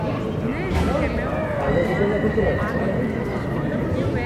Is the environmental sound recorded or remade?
recorded